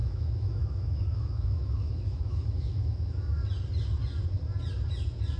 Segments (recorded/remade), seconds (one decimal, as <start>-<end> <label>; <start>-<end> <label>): 0.0-3.4 remade; 3.4-5.4 recorded